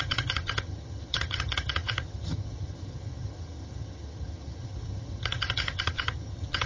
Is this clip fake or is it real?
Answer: fake